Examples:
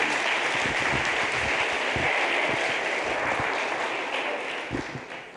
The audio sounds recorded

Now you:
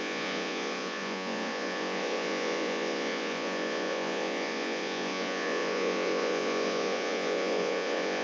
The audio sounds remade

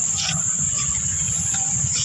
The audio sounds remade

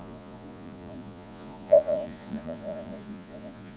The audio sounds remade